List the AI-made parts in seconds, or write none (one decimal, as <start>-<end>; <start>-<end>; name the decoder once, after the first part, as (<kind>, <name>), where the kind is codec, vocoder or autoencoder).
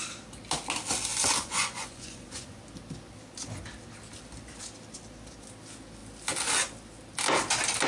1.1-2.6 (vocoder, Vocos)